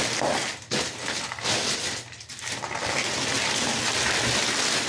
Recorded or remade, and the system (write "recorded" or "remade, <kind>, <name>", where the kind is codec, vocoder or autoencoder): recorded